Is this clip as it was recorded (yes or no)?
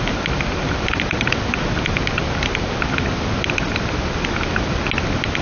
yes